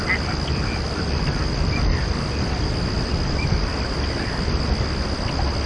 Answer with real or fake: real